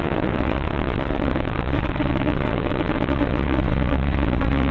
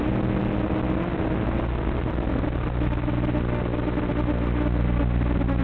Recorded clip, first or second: second